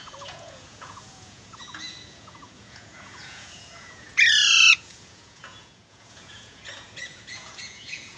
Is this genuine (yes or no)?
no